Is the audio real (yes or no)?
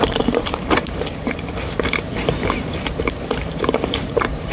no